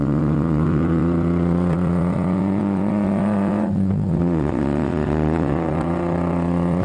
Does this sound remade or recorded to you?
remade